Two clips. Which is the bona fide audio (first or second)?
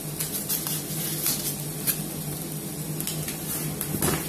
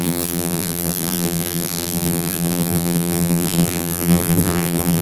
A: first